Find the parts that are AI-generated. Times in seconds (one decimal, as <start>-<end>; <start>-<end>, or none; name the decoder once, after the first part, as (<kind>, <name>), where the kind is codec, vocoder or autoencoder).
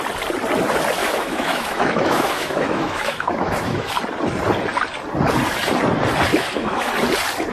1.0-3.9 (autoencoder, DAC-VAE); 6.3-6.9